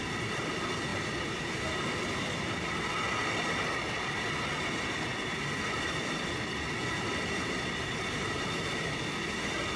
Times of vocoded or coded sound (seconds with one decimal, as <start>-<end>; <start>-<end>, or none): 0.9-1.5